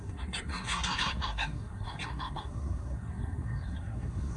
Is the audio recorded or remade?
remade